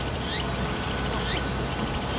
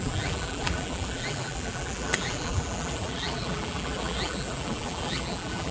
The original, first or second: first